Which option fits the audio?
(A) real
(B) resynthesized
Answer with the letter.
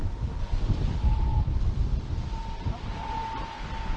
A